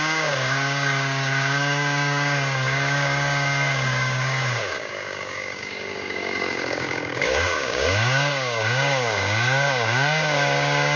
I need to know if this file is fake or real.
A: fake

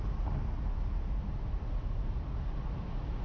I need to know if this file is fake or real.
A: real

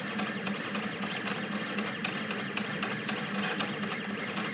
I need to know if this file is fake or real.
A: real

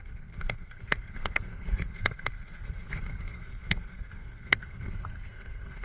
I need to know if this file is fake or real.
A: fake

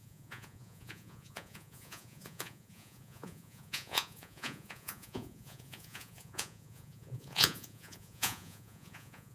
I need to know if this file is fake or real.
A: fake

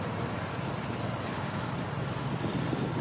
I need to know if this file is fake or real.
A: real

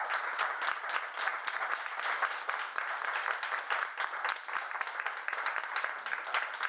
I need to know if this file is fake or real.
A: real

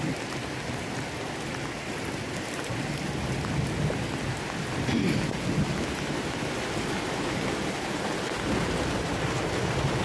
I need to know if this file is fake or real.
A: real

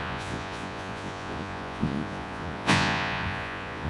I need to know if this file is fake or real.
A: fake